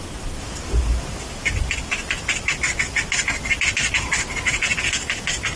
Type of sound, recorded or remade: recorded